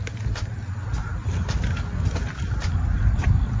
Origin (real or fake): real